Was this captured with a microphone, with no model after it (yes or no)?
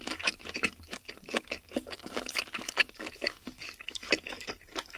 no